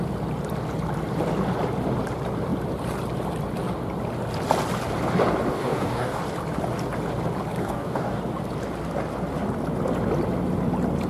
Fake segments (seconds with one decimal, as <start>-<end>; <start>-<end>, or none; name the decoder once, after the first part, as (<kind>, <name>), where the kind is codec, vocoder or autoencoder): 5.5-6.2 (codec, DAC); 7.6-8.2